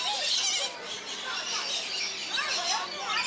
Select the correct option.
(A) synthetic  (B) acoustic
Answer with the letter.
B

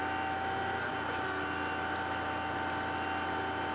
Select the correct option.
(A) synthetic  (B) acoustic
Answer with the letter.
B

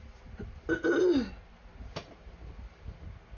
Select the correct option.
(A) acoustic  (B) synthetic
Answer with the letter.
A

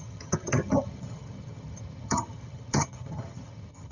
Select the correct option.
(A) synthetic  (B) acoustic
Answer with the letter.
A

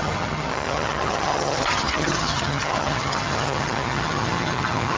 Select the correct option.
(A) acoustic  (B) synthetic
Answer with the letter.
B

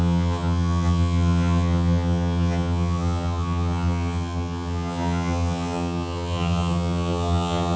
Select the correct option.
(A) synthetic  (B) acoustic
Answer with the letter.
A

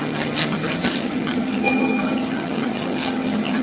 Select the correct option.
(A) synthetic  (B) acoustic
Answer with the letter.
A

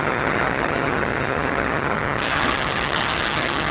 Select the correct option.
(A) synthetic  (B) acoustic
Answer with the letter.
A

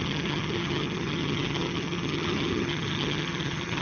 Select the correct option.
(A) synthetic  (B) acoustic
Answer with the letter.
A